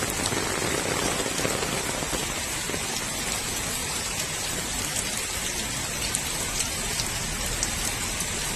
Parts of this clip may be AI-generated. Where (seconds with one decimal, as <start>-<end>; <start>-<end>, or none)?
3.8-5.0